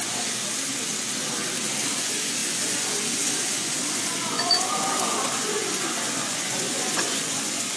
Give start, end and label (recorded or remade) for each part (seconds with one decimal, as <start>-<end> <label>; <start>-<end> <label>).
0.0-0.4 remade; 0.4-2.0 recorded; 2.0-7.8 remade